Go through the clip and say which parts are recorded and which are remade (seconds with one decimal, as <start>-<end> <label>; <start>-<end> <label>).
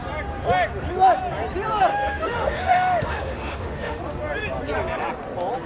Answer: 0.0-1.9 recorded; 1.9-4.0 remade; 4.0-5.7 recorded